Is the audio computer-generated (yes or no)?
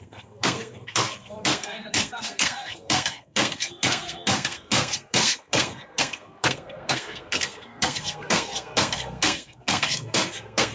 yes